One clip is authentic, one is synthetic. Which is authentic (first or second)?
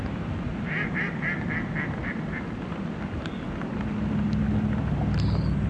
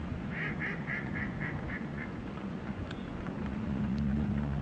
first